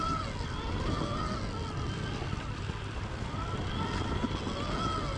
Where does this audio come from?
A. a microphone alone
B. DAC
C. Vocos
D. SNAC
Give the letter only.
A